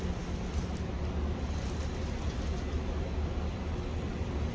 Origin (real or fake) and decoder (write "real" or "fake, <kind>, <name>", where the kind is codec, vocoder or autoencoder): real